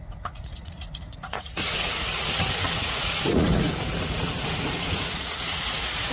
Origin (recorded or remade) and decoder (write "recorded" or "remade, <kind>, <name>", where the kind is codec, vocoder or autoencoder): remade, vocoder, Vocos